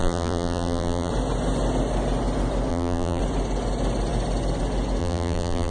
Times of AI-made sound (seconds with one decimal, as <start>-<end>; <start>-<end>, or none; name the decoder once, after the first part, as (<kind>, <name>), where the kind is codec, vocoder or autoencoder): 0.0-1.1 (vocoder, BigVGAN v2); 2.7-3.2; 5.0-5.7